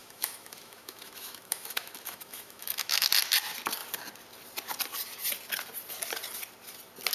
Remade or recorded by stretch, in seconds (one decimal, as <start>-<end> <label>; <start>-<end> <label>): 0.0-3.1 remade; 3.1-7.1 recorded